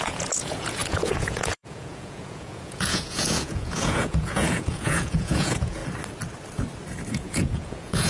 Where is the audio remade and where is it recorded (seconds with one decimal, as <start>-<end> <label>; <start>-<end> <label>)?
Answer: 0.0-5.8 remade; 5.8-7.1 recorded; 7.1-8.1 remade